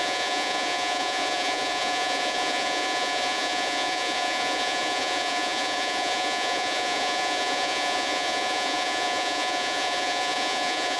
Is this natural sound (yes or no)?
no